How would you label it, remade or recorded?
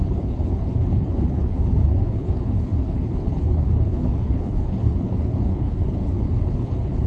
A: remade